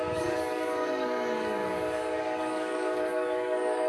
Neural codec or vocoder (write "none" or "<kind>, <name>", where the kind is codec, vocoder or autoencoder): codec, DAC